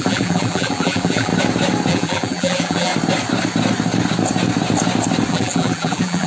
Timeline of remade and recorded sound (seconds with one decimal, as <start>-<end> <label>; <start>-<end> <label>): 0.0-1.3 remade; 1.3-1.9 recorded; 1.9-2.9 remade; 2.9-5.3 recorded; 5.3-6.3 remade